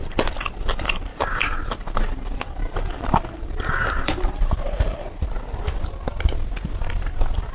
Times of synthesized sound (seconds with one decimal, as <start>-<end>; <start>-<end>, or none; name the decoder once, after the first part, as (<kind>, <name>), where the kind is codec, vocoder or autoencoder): 1.1-5.6 (vocoder, BigVGAN v2)